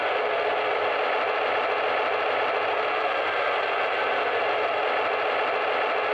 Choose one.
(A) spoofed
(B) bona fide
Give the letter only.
B